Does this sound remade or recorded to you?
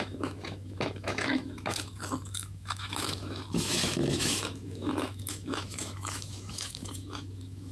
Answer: remade